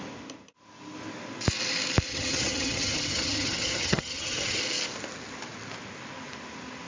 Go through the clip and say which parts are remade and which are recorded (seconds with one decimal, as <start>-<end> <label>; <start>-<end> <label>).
0.0-2.1 recorded; 2.1-4.6 remade; 4.6-6.9 recorded